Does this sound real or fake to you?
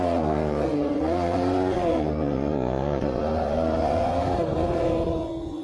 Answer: fake